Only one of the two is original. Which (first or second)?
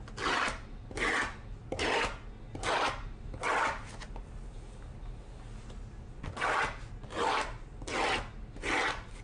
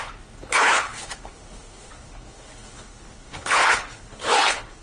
first